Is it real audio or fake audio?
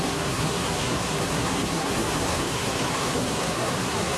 fake